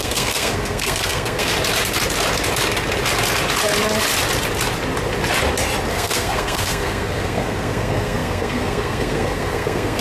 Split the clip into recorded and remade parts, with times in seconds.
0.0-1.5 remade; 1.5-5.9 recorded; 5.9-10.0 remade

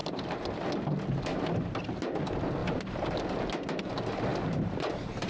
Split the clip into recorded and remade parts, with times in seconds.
0.0-0.5 remade; 0.5-1.3 recorded; 1.3-1.8 remade; 1.8-2.6 recorded; 2.6-3.4 remade; 3.4-4.3 recorded; 4.3-5.3 remade

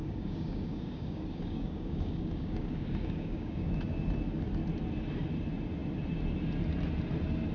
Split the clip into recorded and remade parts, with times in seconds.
0.0-3.7 remade; 3.7-7.5 recorded

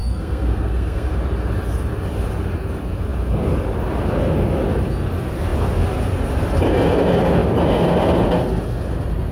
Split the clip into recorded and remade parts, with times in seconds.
0.0-1.2 remade; 1.2-9.3 recorded

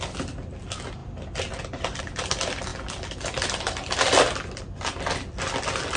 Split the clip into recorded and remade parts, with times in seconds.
0.0-6.0 recorded

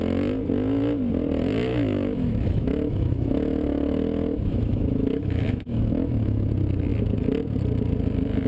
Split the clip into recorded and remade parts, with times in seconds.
0.0-1.7 recorded; 1.7-6.5 remade; 6.5-8.5 recorded

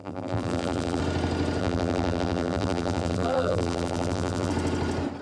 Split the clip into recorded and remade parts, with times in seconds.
0.0-1.0 remade; 1.0-1.6 recorded; 1.6-4.5 remade; 4.5-5.2 recorded

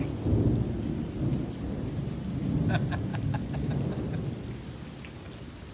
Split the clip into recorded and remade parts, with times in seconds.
0.0-3.1 recorded; 3.1-3.7 remade; 3.7-5.7 recorded